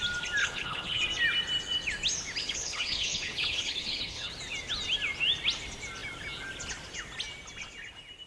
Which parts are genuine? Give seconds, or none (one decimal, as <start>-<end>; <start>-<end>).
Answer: 0.0-0.4; 1.0-2.4; 4.3-8.3